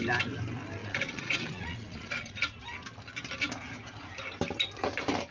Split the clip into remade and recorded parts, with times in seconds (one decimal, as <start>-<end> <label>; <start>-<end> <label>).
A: 0.0-0.8 recorded; 0.8-2.4 remade; 2.4-5.3 recorded